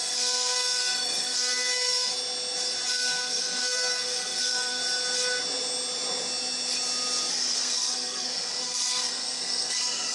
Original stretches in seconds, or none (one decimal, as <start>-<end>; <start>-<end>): 2.1-2.9; 4.8-7.3